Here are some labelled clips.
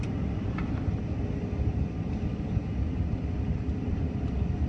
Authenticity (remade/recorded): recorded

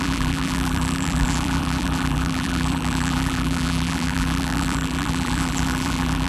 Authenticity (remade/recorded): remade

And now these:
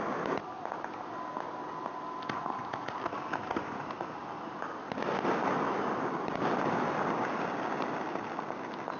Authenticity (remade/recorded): recorded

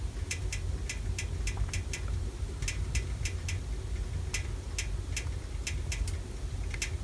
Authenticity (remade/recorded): recorded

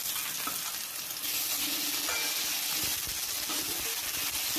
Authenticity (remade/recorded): recorded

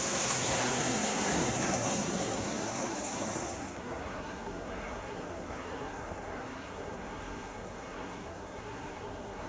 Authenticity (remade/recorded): remade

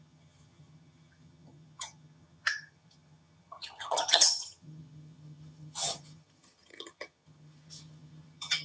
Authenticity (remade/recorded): remade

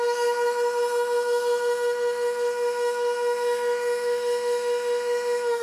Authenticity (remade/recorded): remade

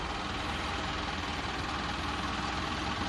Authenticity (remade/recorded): recorded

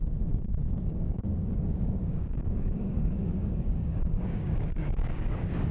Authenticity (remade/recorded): remade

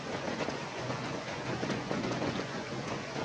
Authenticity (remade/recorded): remade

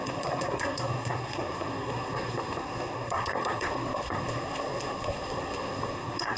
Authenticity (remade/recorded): remade